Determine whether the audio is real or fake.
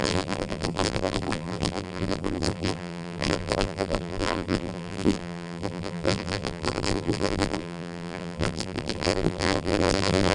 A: fake